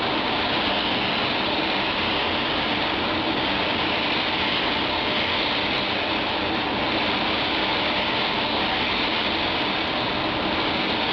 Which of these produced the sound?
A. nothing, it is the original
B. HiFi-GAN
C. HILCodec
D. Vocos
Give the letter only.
A